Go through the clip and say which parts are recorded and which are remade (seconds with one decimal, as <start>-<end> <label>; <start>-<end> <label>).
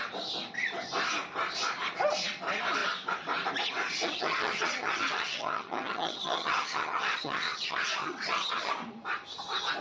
0.0-4.0 recorded; 4.0-8.7 remade; 8.7-9.8 recorded